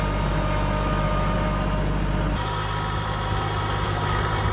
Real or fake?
real